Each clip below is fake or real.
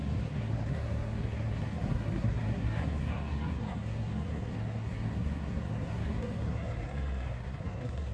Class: fake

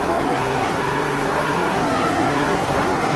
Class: fake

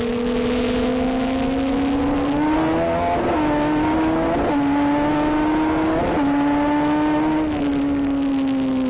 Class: real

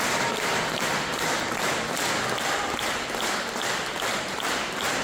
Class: real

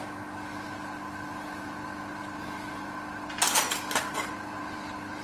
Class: real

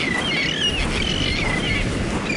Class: real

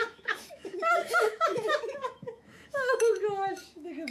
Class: fake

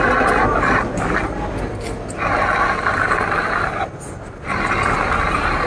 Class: real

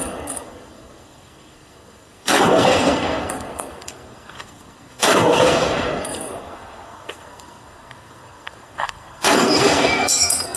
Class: fake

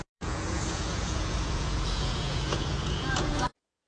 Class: fake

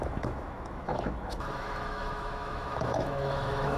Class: fake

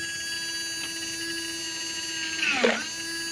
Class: real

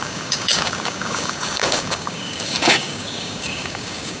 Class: fake